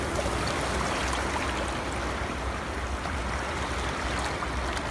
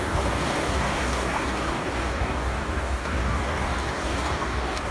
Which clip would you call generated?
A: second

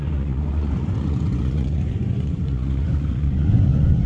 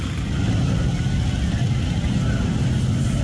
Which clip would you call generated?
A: first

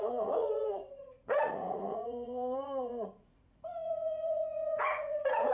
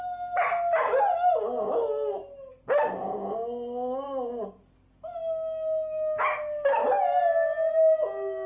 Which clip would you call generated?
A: first